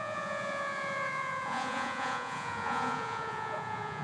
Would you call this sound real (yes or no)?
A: no